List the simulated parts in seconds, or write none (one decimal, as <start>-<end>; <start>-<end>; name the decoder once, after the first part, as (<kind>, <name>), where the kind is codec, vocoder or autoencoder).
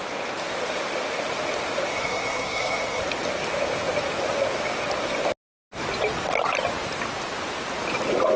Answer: 1.9-3.0 (codec, SNAC)